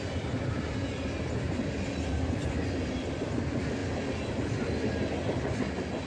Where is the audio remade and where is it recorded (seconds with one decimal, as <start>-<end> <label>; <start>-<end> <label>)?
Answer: 0.0-6.1 recorded